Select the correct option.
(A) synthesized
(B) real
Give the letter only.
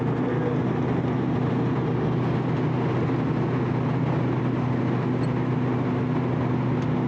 B